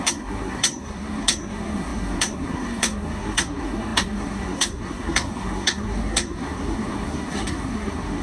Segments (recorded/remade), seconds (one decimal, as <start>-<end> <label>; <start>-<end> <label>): 0.0-8.2 remade